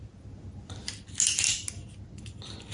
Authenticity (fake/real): real